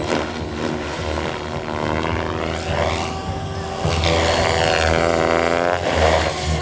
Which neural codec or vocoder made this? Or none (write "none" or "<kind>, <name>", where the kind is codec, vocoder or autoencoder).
none